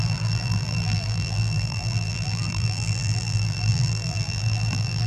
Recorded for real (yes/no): no